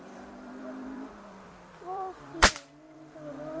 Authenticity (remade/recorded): remade